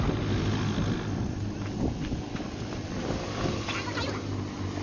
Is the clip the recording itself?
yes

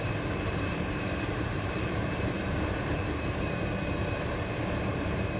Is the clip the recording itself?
no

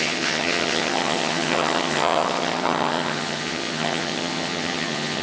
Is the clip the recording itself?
no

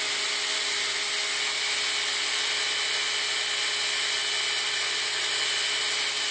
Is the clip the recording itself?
yes